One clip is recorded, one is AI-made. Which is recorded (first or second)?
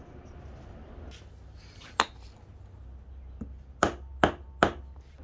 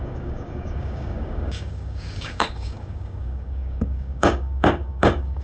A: first